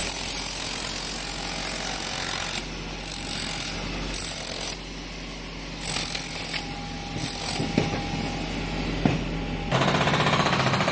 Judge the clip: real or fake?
real